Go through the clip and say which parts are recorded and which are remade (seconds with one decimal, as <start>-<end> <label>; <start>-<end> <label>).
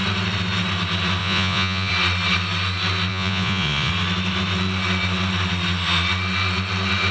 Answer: 0.0-1.2 recorded; 1.2-1.9 remade; 1.9-3.1 recorded; 3.1-3.9 remade; 3.9-7.1 recorded